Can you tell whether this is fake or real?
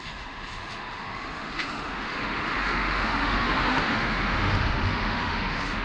fake